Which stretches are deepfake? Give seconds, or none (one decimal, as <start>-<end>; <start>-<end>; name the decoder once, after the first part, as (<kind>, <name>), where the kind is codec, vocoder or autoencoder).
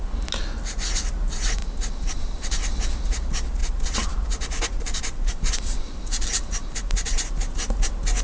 1.6-2.7 (vocoder, BigVGAN v2); 3.6-7.3